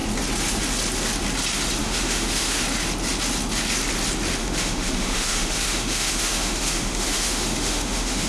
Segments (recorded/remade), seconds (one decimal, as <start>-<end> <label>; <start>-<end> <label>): 0.0-1.8 recorded; 1.8-2.6 remade; 2.6-4.4 recorded; 4.4-8.3 remade